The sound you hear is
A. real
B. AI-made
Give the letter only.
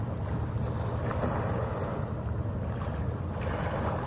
A